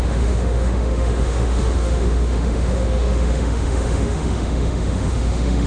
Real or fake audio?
fake